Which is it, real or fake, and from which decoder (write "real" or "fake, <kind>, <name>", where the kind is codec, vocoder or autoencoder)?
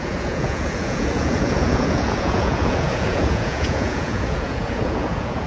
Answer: fake, vocoder, Vocos